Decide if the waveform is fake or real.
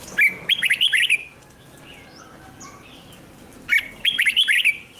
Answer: real